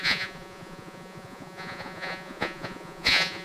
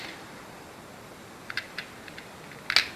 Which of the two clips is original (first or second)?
second